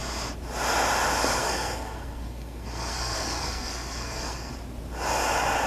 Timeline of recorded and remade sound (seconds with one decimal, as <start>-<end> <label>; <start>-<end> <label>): 0.0-1.4 recorded; 1.4-4.5 remade; 4.5-5.7 recorded